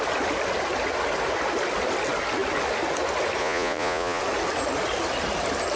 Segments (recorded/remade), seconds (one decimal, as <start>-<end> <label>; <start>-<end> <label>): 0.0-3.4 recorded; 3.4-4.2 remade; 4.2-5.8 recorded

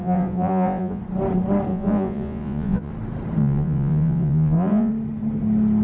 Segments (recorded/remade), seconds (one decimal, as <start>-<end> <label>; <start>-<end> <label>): 0.0-1.0 remade; 1.0-1.7 recorded; 1.7-2.9 remade; 2.9-3.4 recorded; 3.4-4.9 remade; 4.9-5.8 recorded

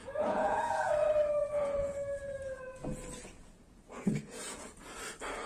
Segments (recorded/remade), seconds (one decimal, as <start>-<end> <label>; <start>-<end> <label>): 0.0-0.9 remade; 0.9-1.4 recorded; 1.4-4.7 remade; 4.7-5.5 recorded

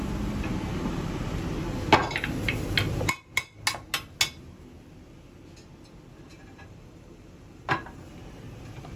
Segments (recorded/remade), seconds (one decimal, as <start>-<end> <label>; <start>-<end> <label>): 0.0-6.3 recorded; 6.3-8.1 remade; 8.1-9.0 recorded

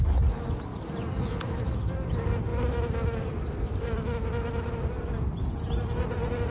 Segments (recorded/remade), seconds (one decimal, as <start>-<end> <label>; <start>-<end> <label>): 0.0-6.5 recorded

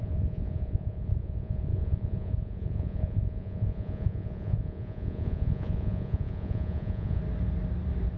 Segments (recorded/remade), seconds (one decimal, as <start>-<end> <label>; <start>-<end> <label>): 0.0-7.2 remade; 7.2-8.2 recorded

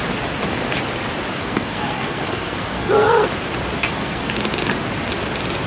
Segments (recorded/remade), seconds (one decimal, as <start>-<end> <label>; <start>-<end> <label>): 0.0-1.4 recorded; 1.4-3.3 remade; 3.3-3.8 recorded; 3.8-4.3 remade; 4.3-5.7 recorded

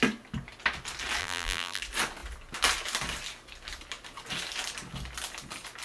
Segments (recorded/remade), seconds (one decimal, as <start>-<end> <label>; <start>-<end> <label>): 0.0-1.2 recorded; 1.2-1.8 remade; 1.8-5.8 recorded